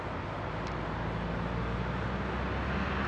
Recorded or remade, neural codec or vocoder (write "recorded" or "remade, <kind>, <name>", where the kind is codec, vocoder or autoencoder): recorded